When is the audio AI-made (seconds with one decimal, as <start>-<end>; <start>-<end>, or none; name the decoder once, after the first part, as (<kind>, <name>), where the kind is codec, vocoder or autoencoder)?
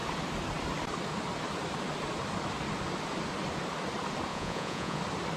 4.3-5.0 (vocoder, Vocos)